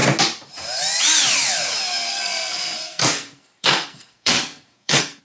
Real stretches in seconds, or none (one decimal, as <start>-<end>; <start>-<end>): 0.0-2.1